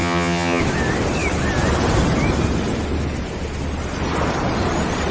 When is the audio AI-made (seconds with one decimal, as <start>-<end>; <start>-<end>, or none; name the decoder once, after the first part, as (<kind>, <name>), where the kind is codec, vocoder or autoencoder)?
0.0-0.6 (vocoder, HiFi-GAN)